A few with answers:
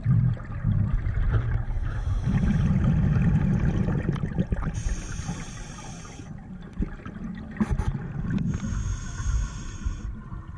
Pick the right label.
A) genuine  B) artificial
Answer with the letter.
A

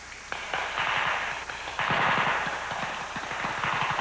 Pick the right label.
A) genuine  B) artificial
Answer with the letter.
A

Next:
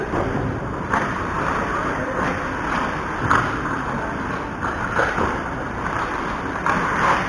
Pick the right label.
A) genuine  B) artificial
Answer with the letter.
B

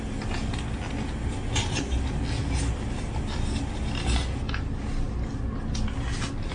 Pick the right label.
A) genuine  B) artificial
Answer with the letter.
A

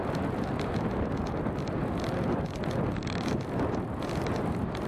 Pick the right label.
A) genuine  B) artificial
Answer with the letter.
A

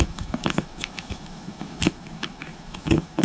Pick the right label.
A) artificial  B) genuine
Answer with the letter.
A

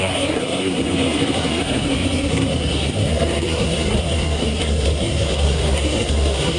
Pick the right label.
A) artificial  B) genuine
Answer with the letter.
A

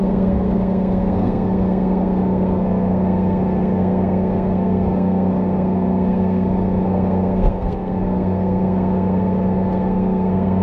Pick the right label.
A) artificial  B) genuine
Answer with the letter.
A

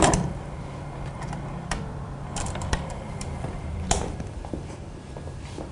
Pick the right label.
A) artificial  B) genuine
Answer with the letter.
A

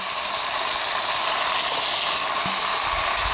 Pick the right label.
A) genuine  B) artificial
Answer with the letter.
A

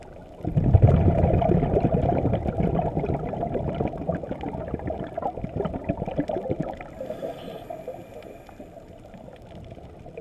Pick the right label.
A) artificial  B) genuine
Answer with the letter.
B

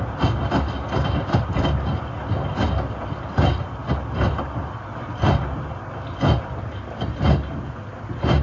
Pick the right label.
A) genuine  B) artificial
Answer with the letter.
A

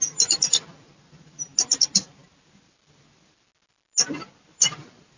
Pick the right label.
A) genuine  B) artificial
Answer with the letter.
A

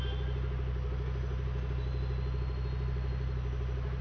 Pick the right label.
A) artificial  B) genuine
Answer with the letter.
B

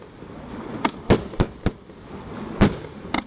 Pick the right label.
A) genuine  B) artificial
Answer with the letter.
A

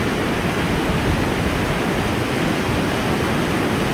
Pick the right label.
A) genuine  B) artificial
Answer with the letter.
A